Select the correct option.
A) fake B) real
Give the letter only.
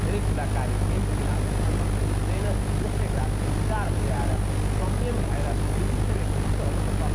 B